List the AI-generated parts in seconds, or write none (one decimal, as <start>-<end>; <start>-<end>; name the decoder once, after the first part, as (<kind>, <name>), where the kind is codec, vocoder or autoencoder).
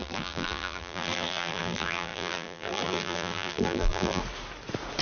0.0-4.2 (vocoder, BigVGAN v2)